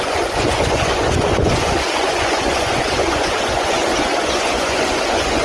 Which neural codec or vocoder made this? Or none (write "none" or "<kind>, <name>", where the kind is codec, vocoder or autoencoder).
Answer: vocoder, Vocos